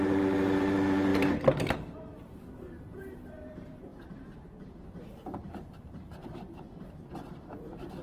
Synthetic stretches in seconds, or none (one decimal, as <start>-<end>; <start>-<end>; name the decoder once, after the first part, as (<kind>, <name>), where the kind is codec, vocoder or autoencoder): 0.0-8.0 (vocoder, BigVGAN v2)

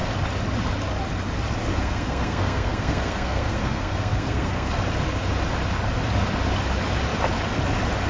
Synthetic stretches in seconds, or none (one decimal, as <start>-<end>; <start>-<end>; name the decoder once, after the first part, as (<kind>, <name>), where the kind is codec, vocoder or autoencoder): 1.7-4.7 (codec, SNAC)

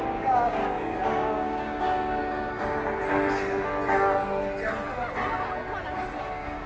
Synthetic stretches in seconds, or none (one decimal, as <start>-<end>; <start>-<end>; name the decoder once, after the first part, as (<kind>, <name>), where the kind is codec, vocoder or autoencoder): 0.0-2.2 (codec, DAC); 6.2-6.7

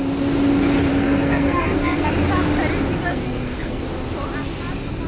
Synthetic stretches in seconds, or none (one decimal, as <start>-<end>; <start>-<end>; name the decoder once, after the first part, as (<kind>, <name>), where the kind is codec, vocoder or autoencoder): 0.9-2.1 (codec, SNAC); 3.1-3.8

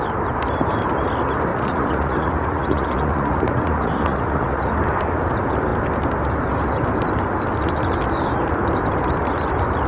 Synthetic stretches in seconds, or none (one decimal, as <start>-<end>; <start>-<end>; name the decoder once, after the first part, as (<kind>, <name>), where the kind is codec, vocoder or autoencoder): 1.5-4.7 (vocoder, Vocos)

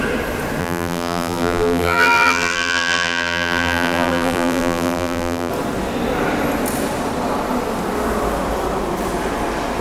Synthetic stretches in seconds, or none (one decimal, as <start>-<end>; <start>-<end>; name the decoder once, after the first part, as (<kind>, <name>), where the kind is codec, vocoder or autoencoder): 0.6-5.5 (vocoder, BigVGAN v2)

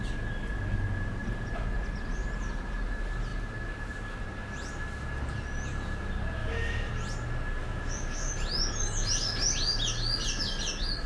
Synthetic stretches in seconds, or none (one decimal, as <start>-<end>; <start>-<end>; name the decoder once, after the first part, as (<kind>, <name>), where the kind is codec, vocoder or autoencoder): 6.4-6.9 (autoencoder, DAC-VAE); 7.6-8.3